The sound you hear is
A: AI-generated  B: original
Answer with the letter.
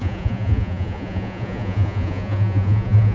A